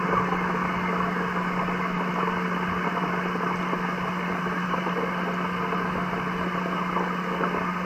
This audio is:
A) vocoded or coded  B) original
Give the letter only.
B